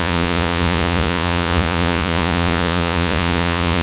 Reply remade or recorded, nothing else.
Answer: remade